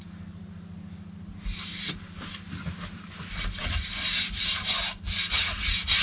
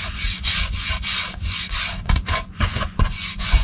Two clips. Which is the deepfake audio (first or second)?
second